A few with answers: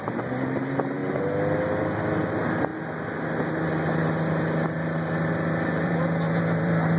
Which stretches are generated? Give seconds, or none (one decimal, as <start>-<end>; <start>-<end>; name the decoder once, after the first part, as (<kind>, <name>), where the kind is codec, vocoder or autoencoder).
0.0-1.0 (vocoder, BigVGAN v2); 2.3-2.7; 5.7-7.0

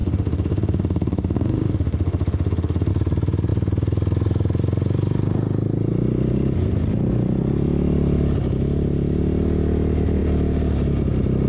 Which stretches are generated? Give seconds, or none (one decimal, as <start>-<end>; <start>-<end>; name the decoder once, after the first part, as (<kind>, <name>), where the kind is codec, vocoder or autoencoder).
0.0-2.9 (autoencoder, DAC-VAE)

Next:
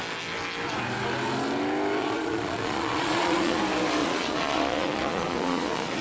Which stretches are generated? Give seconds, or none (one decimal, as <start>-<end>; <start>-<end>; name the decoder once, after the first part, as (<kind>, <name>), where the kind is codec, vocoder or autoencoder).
2.0-3.6 (vocoder, Vocos); 4.0-6.0